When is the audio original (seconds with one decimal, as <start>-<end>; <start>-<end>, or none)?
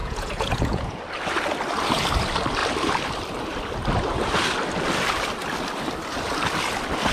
1.0-7.1